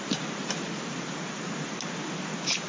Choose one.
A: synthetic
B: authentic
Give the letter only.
B